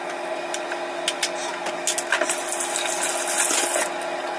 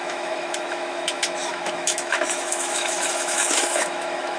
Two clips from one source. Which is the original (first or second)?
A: first